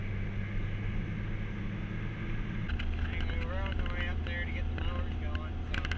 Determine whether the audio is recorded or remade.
recorded